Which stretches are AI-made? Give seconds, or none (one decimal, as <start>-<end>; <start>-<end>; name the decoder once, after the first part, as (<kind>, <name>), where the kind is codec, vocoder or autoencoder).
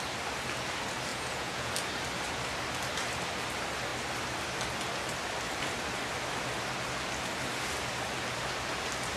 1.1-1.7 (vocoder, Vocos)